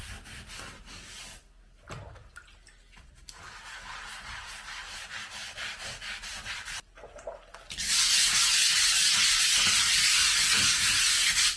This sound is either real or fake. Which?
real